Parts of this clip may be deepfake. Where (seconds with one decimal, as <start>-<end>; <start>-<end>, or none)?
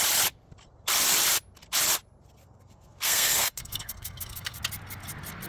2.4-4.6